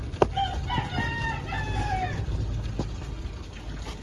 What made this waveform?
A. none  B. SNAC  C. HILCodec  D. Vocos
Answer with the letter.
A